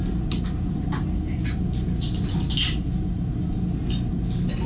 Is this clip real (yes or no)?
yes